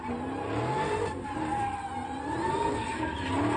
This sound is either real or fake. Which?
real